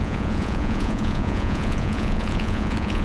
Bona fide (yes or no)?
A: no